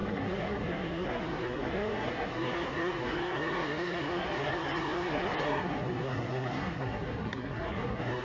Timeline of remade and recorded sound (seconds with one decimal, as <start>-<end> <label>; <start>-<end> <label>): 0.0-8.2 remade